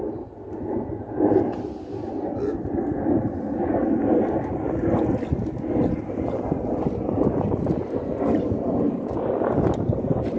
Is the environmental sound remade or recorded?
recorded